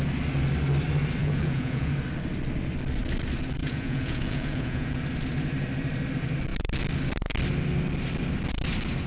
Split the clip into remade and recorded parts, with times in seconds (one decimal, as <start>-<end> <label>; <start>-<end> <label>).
0.0-1.2 recorded; 1.2-1.9 remade; 1.9-3.6 recorded; 3.6-5.0 remade; 5.0-9.1 recorded